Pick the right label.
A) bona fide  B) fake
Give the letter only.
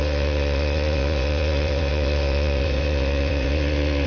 B